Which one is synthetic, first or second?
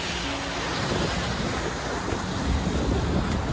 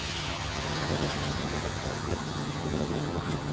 second